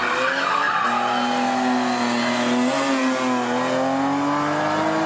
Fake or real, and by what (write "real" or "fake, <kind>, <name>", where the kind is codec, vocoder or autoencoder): real